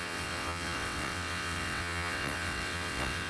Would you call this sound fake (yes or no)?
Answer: yes